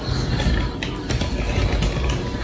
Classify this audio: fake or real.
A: real